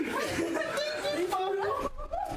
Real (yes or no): no